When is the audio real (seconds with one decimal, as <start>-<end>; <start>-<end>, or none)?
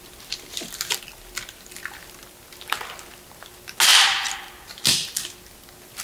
0.0-6.0